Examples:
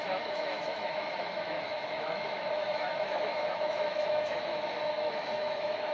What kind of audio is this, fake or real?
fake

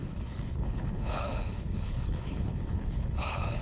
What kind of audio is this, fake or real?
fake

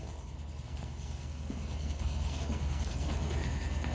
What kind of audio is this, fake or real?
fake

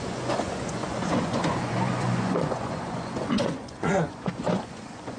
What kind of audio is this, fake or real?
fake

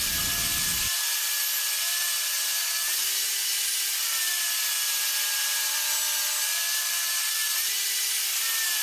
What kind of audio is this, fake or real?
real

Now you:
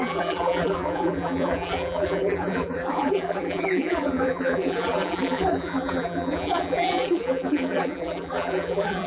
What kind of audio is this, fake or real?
fake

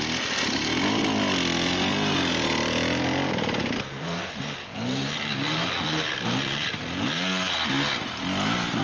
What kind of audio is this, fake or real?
real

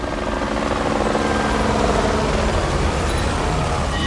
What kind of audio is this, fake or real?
real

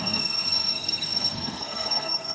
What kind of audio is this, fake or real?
fake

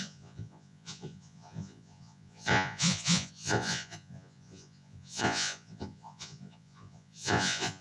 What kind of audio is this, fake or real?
fake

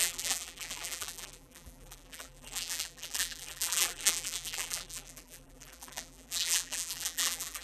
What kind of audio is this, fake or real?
fake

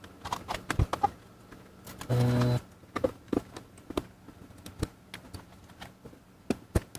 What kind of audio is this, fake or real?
real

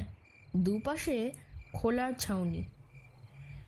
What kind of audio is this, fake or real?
real